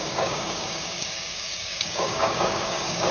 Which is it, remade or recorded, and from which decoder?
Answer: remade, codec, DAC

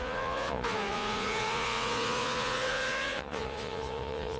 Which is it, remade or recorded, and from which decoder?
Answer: remade, vocoder, Vocos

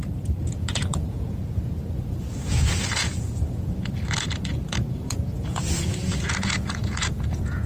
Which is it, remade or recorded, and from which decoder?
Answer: remade, vocoder, Vocos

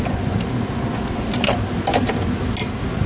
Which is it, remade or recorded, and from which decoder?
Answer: recorded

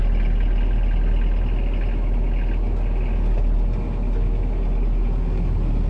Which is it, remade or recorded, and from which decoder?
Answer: recorded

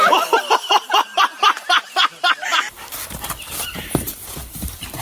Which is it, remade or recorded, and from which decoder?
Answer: recorded